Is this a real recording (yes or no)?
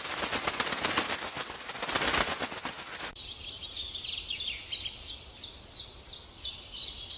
yes